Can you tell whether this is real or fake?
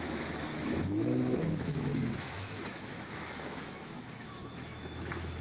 fake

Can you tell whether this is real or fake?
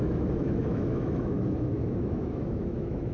fake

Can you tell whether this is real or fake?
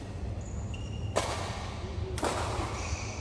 real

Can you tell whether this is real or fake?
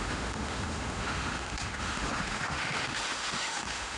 fake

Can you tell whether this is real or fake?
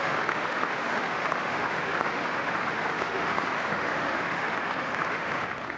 fake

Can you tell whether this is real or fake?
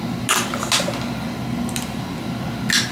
real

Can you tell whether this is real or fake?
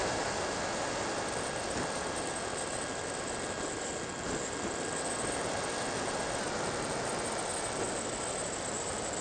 real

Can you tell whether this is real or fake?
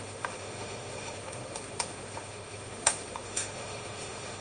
fake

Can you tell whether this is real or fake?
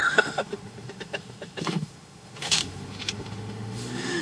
fake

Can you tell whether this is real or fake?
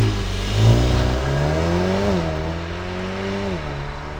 real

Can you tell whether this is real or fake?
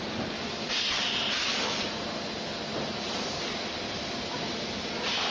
real